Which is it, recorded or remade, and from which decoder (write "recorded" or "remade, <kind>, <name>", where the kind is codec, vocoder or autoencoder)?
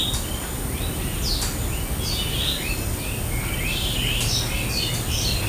recorded